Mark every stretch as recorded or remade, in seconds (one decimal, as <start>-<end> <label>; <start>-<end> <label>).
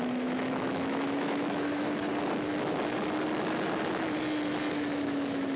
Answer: 0.0-2.1 remade; 2.1-4.7 recorded; 4.7-5.6 remade